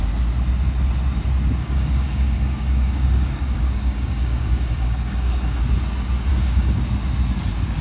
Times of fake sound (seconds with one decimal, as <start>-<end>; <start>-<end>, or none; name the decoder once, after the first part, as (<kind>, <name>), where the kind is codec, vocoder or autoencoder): 1.6-5.6 (codec, DAC); 6.3-6.8